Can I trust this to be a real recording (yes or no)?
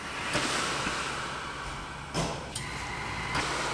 yes